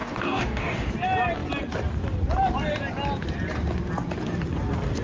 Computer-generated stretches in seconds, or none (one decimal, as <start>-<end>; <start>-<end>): 0.0-0.9